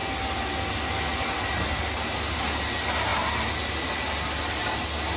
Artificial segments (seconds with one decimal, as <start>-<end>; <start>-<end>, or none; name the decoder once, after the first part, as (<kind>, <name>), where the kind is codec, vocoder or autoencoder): none